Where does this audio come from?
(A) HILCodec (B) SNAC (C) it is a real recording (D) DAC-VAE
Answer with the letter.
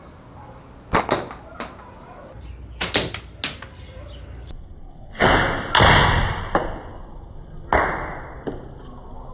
C